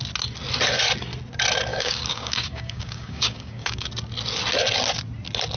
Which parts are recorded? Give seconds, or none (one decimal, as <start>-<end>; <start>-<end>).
0.0-1.7; 3.9-5.6